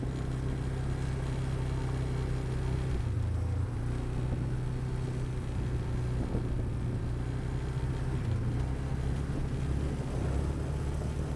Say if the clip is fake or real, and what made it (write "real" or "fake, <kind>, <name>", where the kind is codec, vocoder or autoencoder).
real